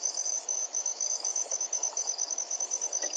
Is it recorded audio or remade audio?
remade